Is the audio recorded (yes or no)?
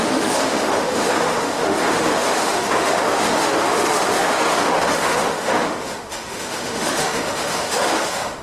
no